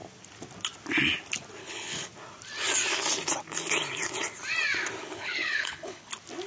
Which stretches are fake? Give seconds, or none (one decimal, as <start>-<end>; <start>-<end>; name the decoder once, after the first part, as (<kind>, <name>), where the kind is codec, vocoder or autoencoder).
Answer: 1.6-2.1 (codec, HILCodec); 5.0-6.1